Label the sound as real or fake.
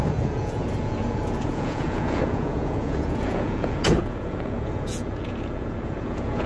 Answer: fake